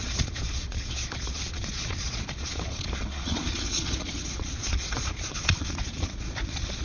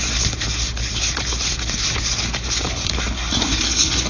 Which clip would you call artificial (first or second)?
first